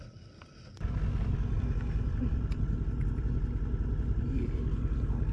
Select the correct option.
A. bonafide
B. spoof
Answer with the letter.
A